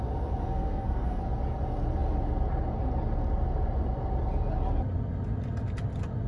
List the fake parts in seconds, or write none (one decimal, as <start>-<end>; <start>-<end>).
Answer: 0.4-1.2